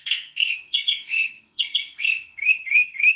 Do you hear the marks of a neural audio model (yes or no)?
yes